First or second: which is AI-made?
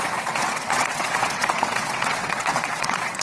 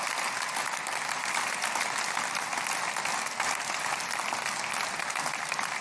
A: first